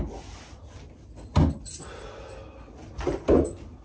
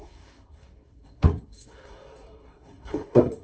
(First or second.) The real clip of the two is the first